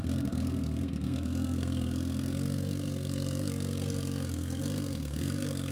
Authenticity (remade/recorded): remade